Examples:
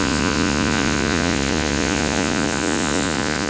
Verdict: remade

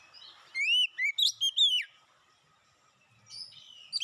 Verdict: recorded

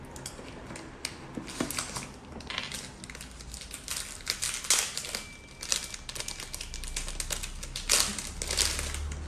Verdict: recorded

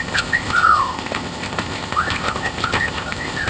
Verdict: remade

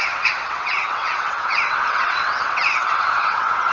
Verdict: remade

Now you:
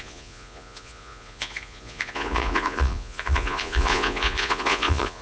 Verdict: remade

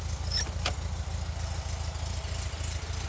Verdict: recorded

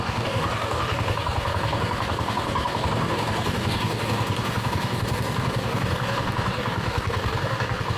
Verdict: remade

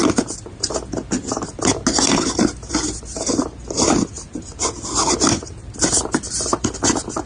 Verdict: recorded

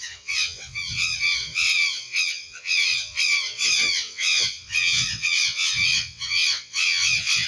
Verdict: remade